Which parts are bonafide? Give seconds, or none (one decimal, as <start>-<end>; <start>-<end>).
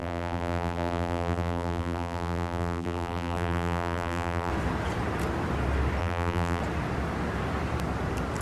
4.5-6.0; 6.6-8.4